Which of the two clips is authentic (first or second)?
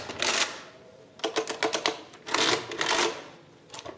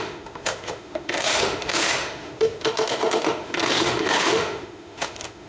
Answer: first